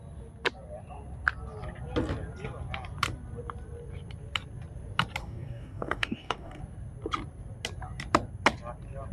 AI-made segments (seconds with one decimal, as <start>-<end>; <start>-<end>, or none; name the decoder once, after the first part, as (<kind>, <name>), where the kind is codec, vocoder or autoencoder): 5.2-6.6 (codec, DAC)